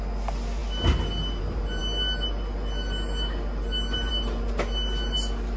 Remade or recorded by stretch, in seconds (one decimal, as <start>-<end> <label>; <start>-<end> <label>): 0.0-5.6 recorded